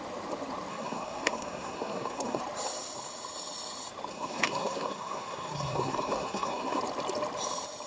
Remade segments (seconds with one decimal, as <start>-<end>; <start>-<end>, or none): 0.7-2.4; 4.1-6.8